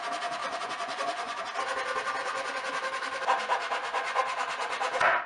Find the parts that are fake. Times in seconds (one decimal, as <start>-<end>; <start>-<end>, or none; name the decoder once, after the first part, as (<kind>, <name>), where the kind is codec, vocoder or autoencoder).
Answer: 0.4-1.4 (vocoder, Vocos); 2.2-2.7; 3.8-4.4